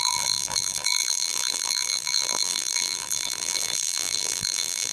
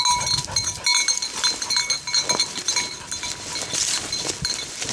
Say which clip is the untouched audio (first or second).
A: second